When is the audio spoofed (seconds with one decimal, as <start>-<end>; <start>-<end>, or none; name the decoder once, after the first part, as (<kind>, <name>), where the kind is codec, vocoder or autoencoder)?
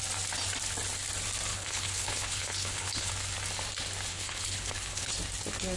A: 1.5-3.1 (codec, HILCodec); 4.1-5.1